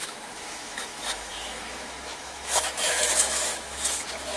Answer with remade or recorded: remade